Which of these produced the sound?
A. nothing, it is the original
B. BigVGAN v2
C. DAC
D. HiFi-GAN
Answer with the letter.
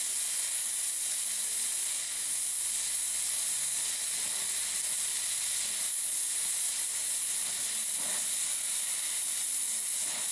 A